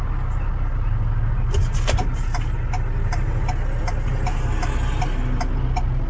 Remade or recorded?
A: recorded